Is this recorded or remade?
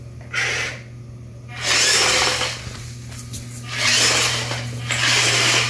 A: recorded